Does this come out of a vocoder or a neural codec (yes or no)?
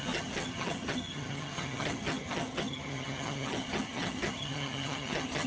yes